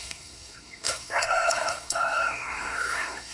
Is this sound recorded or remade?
remade